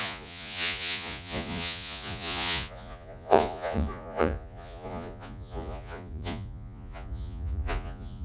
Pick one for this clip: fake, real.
fake